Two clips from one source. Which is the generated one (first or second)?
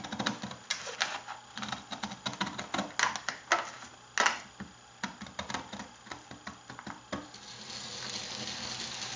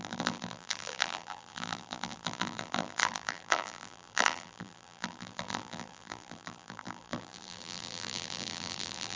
second